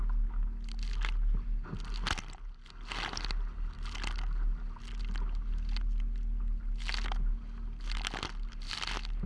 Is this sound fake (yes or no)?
no